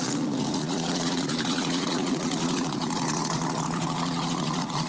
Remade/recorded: remade